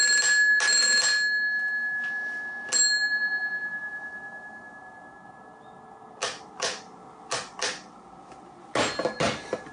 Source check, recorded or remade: recorded